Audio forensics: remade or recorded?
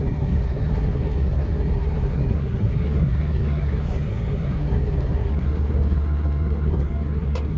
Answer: remade